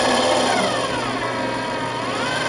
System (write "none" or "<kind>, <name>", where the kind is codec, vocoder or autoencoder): none